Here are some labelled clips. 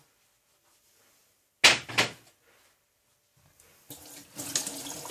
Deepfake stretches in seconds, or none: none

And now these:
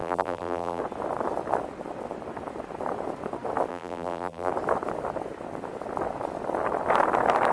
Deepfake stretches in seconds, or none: 0.0-0.8 (vocoder, BigVGAN v2); 3.7-4.5

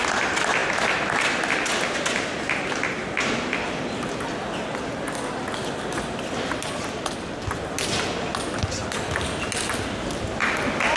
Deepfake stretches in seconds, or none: none

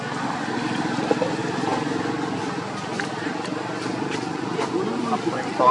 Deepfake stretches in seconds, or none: none

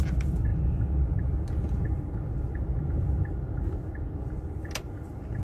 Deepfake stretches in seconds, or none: none